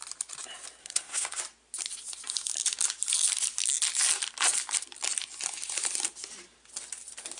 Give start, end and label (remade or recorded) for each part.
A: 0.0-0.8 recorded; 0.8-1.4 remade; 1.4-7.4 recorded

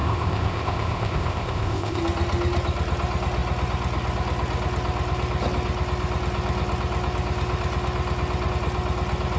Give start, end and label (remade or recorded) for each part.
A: 0.0-2.0 remade; 2.0-9.4 recorded

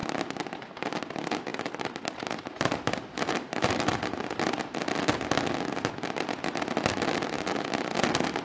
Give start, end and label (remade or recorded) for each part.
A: 0.0-1.5 recorded; 1.5-4.0 remade; 4.0-8.4 recorded

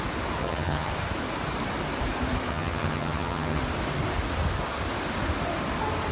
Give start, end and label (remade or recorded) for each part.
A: 0.0-0.4 recorded; 0.4-0.9 remade; 0.9-2.5 recorded; 2.5-3.6 remade; 3.6-6.1 recorded

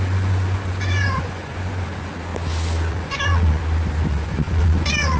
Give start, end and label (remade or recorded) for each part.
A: 0.0-2.3 remade; 2.3-2.9 recorded; 2.9-3.6 remade; 3.6-4.1 recorded; 4.1-5.2 remade